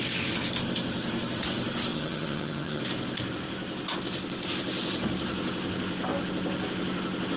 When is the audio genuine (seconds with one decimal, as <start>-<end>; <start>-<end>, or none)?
0.0-1.9; 2.8-7.4